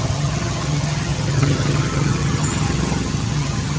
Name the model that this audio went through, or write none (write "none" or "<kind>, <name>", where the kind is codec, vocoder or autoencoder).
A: vocoder, HiFi-GAN